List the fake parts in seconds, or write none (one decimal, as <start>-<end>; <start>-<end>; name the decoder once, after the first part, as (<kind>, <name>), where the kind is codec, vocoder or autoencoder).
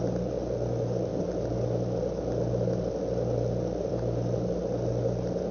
none